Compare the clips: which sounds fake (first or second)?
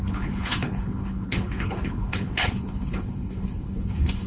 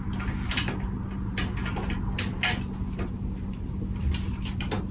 first